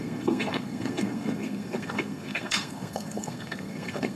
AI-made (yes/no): yes